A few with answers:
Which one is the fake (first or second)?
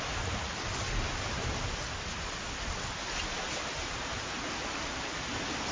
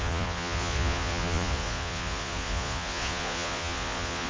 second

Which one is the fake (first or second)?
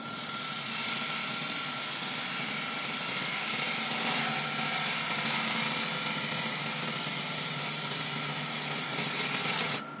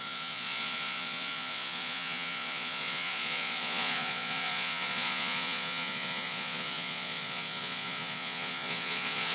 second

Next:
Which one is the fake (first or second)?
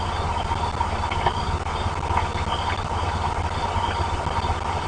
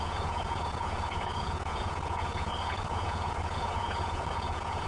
second